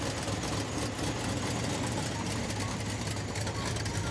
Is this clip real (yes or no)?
yes